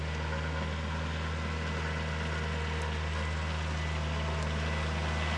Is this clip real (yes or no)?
yes